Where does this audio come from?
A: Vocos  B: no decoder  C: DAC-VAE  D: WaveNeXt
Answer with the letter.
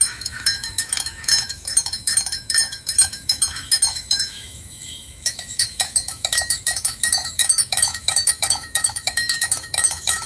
C